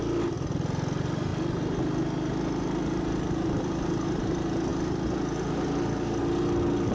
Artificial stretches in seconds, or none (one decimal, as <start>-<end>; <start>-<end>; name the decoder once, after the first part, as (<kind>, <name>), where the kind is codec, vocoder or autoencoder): none